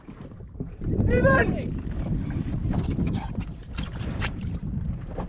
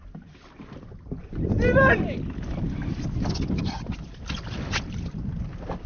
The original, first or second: second